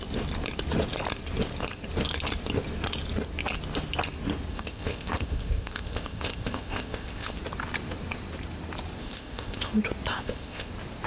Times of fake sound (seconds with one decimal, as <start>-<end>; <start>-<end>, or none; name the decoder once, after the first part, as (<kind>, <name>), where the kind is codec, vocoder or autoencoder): 4.5-7.4 (codec, ZipCodec); 9.0-9.7; 10.1-10.7

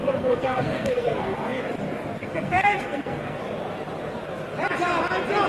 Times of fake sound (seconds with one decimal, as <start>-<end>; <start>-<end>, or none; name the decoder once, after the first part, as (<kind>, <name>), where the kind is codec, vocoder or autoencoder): 0.0-1.6 (codec, SNAC); 2.2-3.4

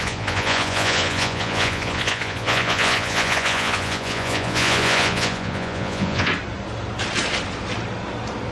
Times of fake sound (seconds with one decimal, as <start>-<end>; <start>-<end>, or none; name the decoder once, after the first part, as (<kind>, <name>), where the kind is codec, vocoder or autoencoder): 0.0-6.3 (vocoder, Vocos)

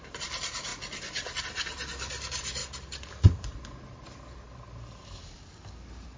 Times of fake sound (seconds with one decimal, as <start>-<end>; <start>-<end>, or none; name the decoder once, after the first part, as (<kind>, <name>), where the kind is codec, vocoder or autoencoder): none

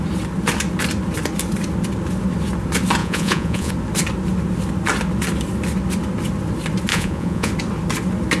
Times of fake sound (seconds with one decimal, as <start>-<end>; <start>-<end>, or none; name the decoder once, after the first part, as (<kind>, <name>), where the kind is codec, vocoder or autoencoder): 3.0-3.7 (vocoder, Vocos); 6.9-7.5

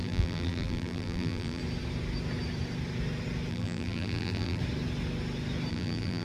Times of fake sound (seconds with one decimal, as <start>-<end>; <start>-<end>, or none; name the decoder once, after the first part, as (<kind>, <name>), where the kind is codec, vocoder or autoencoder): 0.0-1.6 (vocoder, BigVGAN v2); 3.5-4.6; 5.7-6.2